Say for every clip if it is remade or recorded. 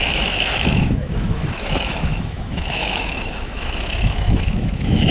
remade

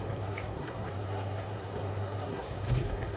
remade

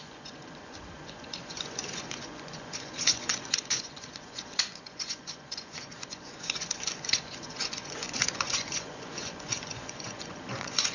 remade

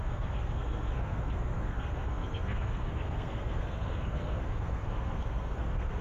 remade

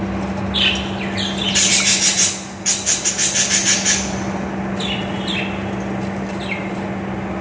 recorded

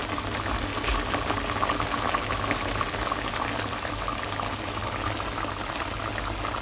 recorded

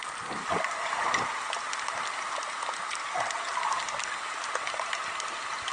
recorded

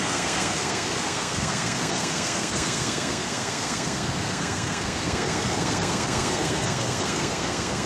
remade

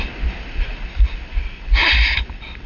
recorded